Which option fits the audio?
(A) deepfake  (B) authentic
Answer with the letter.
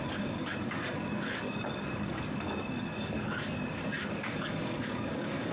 A